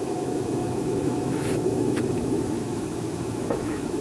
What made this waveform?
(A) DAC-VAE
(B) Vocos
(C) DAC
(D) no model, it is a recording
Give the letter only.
A